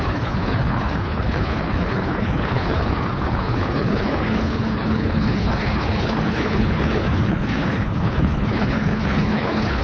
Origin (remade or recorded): remade